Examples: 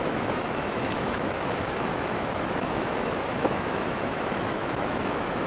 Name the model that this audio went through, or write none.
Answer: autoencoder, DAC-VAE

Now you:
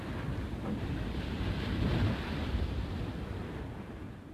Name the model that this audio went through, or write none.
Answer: none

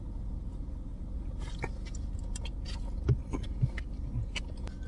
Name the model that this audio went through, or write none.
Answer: none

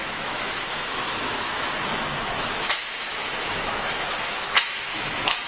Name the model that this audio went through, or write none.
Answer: autoencoder, DAC-VAE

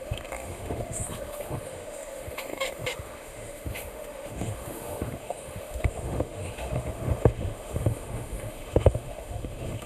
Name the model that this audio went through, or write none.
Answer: autoencoder, DAC-VAE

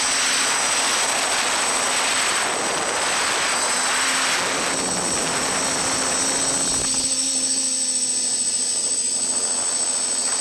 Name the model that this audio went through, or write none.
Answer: none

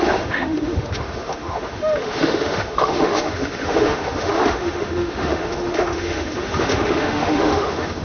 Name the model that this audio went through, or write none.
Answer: autoencoder, DAC-VAE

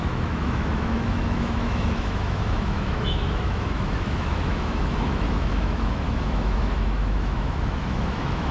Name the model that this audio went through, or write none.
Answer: autoencoder, DAC-VAE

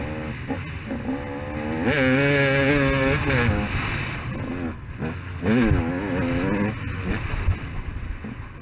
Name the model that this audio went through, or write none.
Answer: none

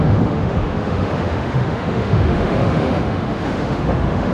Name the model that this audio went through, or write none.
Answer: autoencoder, DAC-VAE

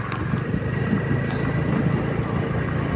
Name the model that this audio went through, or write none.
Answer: none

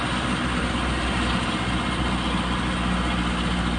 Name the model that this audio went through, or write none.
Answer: none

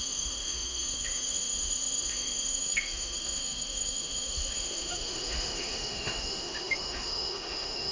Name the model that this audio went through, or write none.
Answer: autoencoder, DAC-VAE